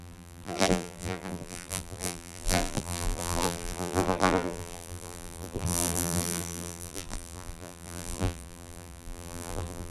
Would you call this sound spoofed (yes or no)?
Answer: yes